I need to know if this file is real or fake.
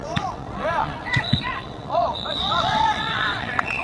fake